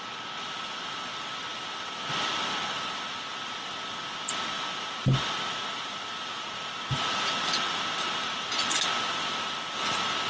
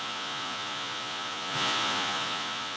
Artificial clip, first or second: second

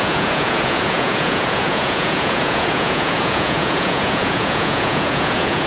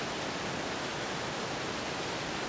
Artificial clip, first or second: first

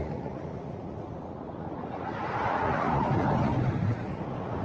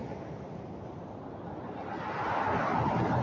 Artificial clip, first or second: first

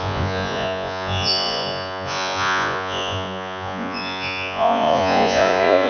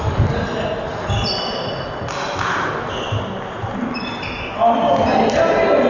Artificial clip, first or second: first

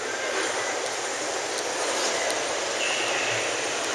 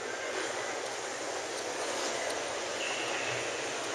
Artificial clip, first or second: second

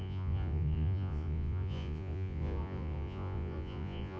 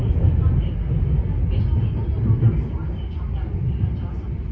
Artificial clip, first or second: first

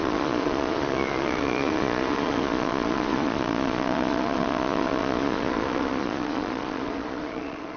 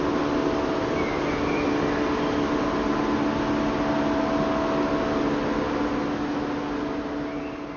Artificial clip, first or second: first